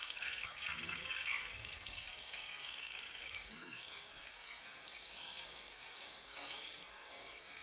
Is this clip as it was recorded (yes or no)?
no